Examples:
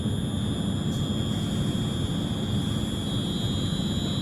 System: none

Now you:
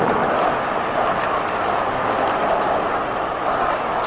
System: none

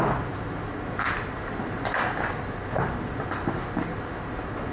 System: none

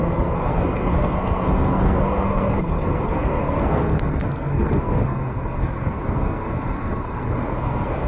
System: codec, SNAC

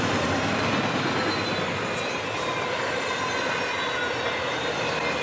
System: none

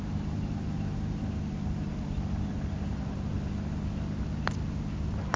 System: none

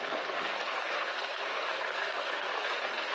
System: codec, SNAC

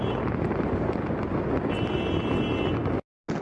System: none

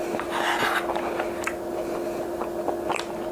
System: none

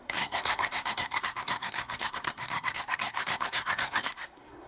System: codec, SNAC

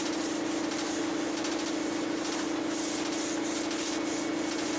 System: none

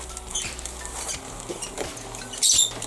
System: none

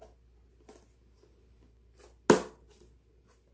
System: none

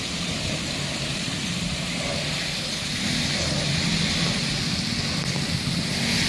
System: none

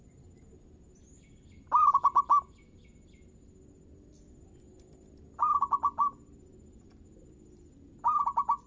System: none